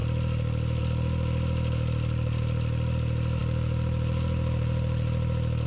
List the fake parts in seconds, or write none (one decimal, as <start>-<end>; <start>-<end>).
none